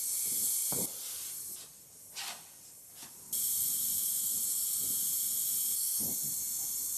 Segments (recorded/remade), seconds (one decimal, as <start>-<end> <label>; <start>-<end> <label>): 0.0-7.0 recorded